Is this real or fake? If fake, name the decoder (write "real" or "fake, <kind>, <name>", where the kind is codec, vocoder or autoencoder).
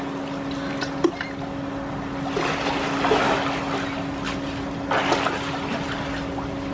real